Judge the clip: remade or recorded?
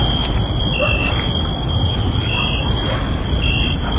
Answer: recorded